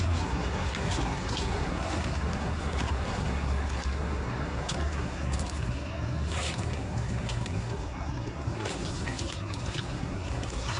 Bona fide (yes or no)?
no